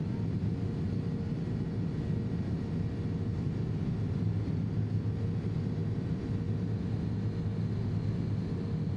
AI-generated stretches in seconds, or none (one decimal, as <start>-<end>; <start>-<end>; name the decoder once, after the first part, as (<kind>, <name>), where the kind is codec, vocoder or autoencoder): none